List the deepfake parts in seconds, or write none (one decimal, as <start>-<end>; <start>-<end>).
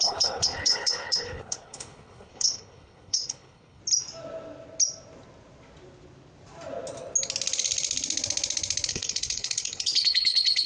0.0-3.8; 8.9-10.7